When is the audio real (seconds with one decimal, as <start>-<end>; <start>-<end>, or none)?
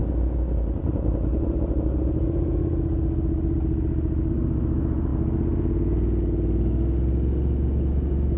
0.0-8.4